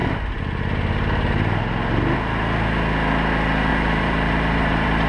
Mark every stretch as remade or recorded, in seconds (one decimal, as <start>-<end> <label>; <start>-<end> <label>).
0.0-3.7 recorded; 3.7-5.1 remade